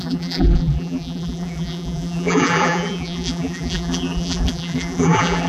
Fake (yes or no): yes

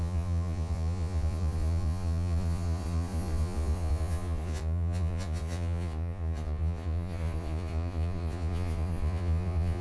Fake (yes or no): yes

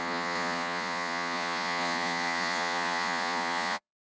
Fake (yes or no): yes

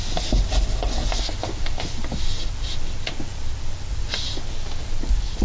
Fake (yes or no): no